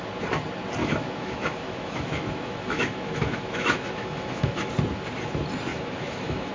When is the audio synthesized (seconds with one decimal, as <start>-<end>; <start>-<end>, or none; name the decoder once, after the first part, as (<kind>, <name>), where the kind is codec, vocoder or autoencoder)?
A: 0.8-4.7 (autoencoder, DAC-VAE); 5.7-6.5